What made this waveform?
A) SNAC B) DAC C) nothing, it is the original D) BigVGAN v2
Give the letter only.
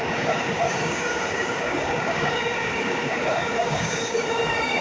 B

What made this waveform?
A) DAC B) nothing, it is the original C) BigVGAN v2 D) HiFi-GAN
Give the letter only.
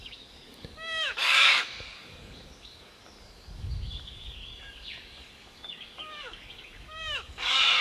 A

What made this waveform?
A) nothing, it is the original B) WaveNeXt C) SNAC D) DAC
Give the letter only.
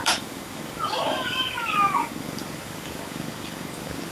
D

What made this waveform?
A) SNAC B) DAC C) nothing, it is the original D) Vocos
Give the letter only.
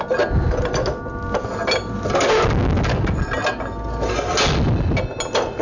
C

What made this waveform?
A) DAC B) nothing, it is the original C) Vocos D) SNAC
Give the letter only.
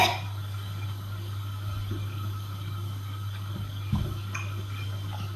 A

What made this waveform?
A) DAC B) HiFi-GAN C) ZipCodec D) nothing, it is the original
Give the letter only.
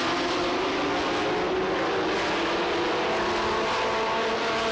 D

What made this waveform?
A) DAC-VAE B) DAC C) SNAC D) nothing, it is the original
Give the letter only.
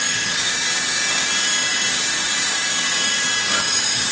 B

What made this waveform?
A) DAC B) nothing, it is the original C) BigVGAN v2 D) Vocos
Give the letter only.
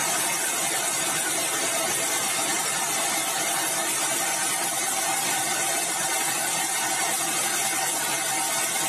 B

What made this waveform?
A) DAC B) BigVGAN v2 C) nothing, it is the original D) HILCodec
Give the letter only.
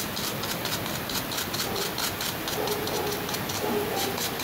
C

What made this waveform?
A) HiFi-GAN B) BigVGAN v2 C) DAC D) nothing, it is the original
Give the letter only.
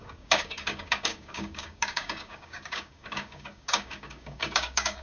C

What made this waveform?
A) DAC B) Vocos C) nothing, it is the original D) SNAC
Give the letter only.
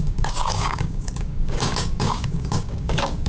A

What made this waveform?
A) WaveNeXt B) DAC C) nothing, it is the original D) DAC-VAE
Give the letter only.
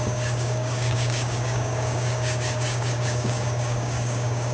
B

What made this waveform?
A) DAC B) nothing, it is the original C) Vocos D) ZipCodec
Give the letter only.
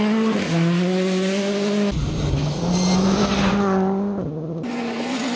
B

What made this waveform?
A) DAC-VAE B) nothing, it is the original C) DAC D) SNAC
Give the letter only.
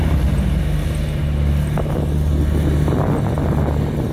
B